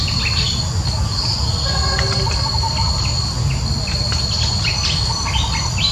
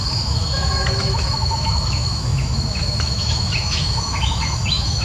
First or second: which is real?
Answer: first